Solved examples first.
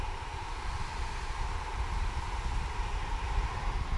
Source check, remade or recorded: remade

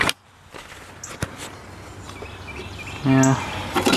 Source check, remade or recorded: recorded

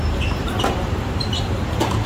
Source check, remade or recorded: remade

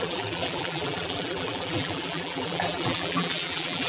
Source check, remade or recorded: remade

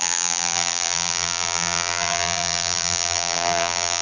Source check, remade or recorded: remade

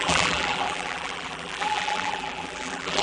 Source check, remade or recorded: remade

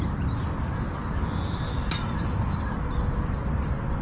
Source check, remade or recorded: recorded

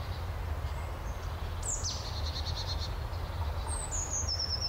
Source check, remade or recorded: recorded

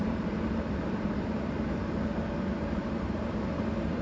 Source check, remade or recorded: remade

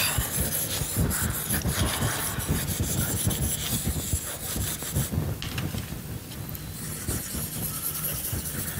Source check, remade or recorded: recorded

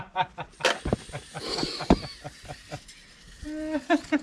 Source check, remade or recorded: recorded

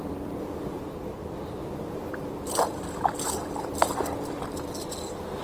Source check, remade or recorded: remade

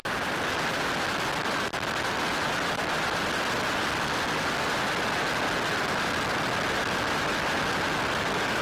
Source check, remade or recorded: recorded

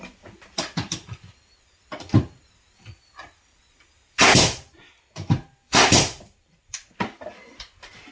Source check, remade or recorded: remade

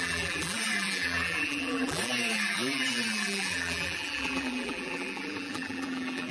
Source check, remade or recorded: remade